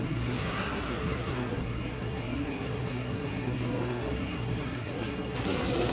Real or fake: fake